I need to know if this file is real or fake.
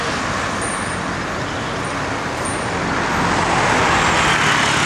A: real